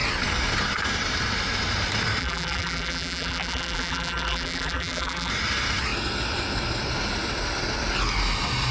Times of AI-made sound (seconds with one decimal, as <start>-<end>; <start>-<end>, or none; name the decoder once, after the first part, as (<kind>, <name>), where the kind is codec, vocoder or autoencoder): 2.2-5.3 (vocoder, BigVGAN v2)